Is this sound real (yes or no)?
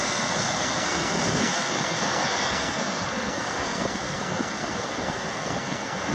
no